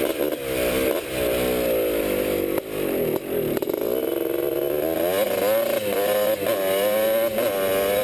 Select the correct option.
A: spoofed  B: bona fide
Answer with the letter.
B